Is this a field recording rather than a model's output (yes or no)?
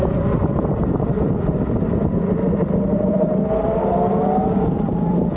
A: yes